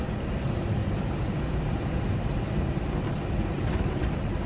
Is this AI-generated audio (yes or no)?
no